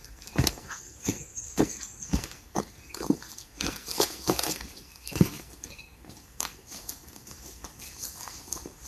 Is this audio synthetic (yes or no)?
yes